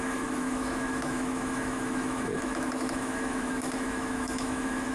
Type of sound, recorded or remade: remade